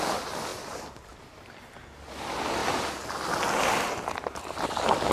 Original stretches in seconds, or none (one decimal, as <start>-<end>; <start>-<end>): 0.0-5.1